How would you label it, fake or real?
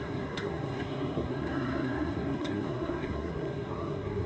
fake